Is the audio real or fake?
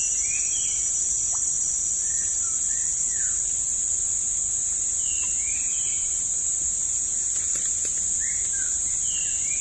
real